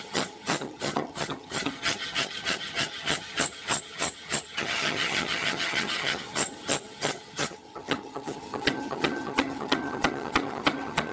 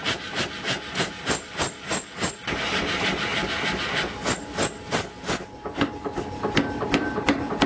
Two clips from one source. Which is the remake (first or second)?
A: first